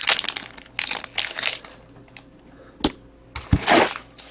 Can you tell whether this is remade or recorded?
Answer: recorded